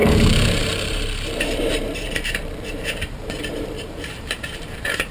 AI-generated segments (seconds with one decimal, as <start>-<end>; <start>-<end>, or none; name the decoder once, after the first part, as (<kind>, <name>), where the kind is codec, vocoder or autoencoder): 0.0-5.1 (vocoder, BigVGAN v2)